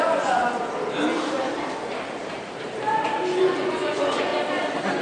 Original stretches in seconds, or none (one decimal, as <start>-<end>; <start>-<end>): 0.4-3.4; 4.3-5.0